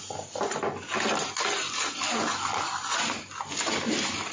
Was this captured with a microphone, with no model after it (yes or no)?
yes